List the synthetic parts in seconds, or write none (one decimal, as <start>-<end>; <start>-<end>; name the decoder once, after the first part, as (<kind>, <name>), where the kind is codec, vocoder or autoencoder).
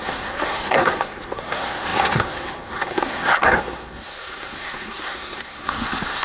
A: 0.0-6.2 (codec, SNAC)